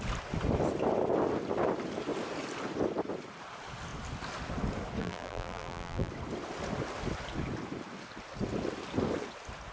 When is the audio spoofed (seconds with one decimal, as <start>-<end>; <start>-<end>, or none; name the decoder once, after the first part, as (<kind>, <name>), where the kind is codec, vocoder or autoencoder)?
5.0-6.1 (vocoder, BigVGAN v2)

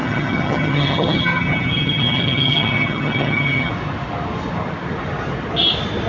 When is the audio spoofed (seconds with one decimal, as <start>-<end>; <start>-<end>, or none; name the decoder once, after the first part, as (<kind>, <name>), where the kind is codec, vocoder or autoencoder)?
0.0-3.7 (vocoder, HiFi-GAN)

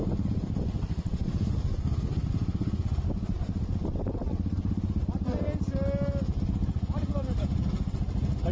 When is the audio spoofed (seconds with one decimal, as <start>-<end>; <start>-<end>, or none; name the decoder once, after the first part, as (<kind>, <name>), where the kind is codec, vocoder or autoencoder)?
none

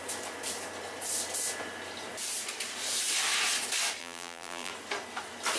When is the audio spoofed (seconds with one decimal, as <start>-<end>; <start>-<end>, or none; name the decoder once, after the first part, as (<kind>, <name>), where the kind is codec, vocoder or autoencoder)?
4.0-4.7 (vocoder, BigVGAN v2)

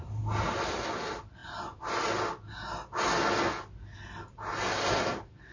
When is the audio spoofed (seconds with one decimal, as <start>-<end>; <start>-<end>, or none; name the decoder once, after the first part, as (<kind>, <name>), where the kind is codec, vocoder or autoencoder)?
none

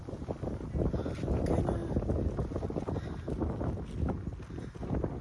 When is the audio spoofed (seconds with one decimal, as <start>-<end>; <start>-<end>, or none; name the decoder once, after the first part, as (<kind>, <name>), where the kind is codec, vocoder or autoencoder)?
none

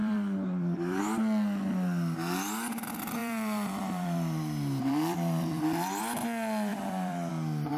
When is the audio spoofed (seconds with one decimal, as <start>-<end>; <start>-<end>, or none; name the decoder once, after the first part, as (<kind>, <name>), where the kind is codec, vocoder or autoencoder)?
0.0-1.0 (vocoder, BigVGAN v2); 3.2-6.0; 6.7-7.3